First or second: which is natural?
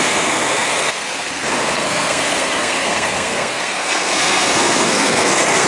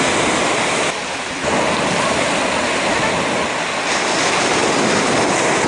second